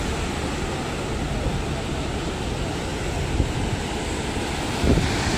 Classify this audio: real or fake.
real